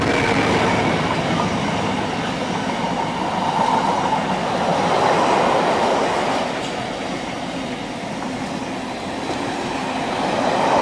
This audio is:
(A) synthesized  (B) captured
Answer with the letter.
B